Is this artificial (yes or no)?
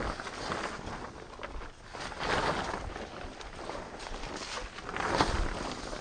no